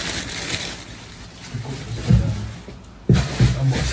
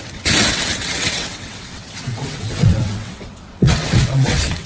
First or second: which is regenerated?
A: second